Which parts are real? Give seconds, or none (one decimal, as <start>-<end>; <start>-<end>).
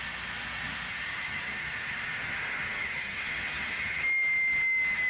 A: 0.0-0.9; 4.0-5.1